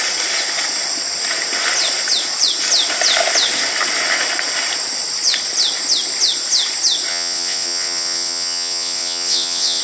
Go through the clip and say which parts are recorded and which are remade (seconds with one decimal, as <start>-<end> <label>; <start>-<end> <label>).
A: 0.0-7.1 recorded; 7.1-9.8 remade